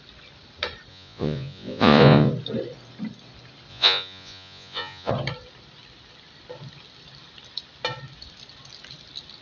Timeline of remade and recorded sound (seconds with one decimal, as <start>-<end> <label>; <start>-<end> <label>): 0.0-0.9 recorded; 0.9-2.3 remade; 2.3-3.7 recorded; 3.7-5.1 remade; 5.1-9.4 recorded

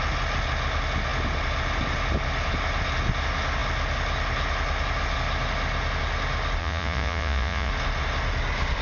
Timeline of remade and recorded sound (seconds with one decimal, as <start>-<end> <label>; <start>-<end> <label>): 0.0-6.6 recorded; 6.6-7.7 remade; 7.7-8.8 recorded

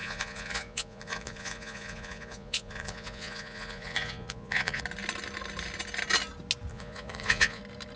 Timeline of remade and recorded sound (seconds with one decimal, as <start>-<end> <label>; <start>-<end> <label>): 0.0-4.8 remade; 4.8-6.7 recorded; 6.7-7.6 remade; 7.6-8.0 recorded

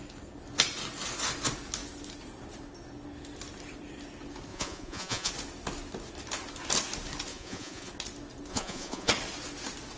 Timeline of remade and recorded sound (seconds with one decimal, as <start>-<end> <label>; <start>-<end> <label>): 0.0-4.5 recorded; 4.5-5.3 remade; 5.3-7.3 recorded; 7.3-7.9 remade; 7.9-8.5 recorded; 8.5-9.1 remade; 9.1-10.0 recorded